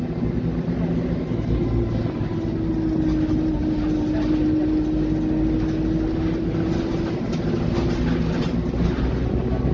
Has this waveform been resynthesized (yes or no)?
no